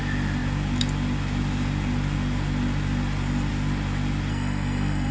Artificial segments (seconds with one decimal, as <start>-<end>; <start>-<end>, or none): 4.3-5.1